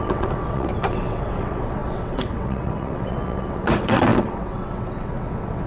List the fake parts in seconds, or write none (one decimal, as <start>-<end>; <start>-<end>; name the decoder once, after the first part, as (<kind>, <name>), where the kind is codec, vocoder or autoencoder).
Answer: 0.0-5.7 (vocoder, WaveNeXt)